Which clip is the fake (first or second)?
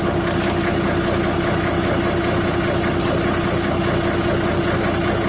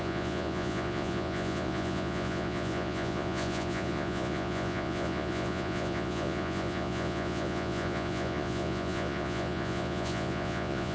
second